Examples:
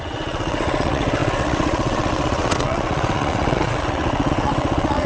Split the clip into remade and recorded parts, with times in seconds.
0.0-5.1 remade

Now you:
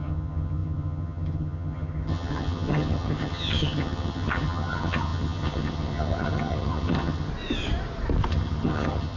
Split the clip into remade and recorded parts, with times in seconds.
0.0-7.3 remade; 7.3-8.3 recorded; 8.3-9.2 remade

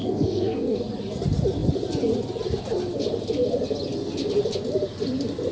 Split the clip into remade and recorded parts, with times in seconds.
0.0-0.8 remade; 0.8-5.5 recorded

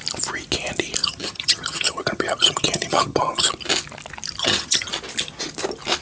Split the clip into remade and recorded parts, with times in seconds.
0.0-1.0 recorded; 1.0-3.5 remade; 3.5-4.4 recorded; 4.4-4.9 remade; 4.9-6.0 recorded